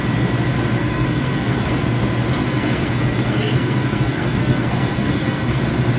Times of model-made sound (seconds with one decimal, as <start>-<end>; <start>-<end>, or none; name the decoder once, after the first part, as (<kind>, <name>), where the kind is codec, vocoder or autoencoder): 0.8-1.8 (codec, SNAC); 2.4-5.6